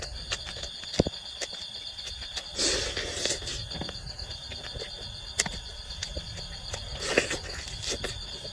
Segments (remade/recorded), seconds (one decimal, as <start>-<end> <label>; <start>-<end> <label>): 0.0-8.5 recorded